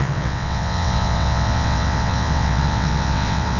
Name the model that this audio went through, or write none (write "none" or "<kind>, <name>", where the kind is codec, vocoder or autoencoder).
vocoder, WaveNeXt